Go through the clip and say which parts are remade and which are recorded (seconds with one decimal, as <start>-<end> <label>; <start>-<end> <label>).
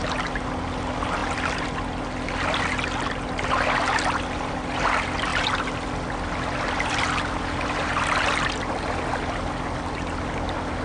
0.0-10.8 recorded